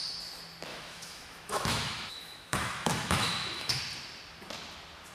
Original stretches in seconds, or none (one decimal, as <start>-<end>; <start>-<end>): 0.0-0.7; 3.8-5.1